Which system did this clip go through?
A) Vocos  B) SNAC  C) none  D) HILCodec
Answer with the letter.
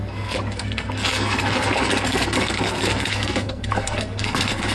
B